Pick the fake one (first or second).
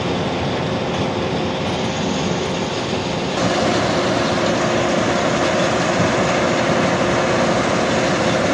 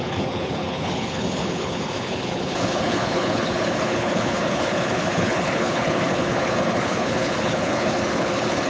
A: second